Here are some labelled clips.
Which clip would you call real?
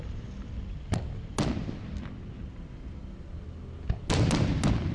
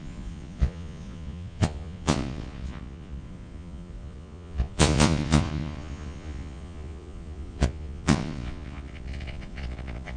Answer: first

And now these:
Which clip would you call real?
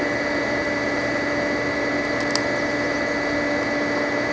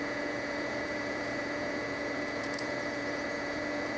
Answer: first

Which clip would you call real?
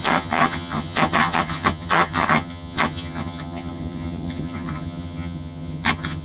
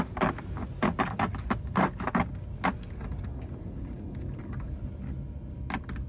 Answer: second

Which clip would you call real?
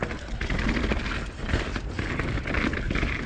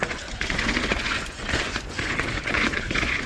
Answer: first